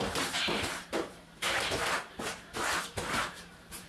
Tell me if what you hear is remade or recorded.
remade